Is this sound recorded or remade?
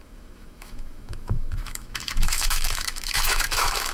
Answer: remade